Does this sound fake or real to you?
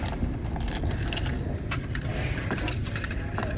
fake